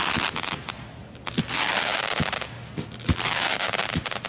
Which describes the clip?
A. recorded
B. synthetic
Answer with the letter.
A